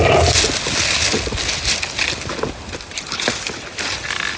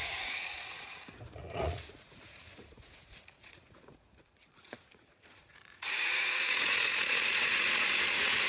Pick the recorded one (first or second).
first